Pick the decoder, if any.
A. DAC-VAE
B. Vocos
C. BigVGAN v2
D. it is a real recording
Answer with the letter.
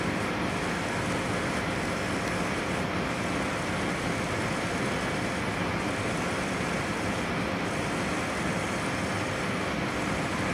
D